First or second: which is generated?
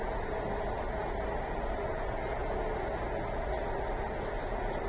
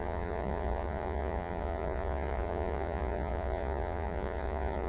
second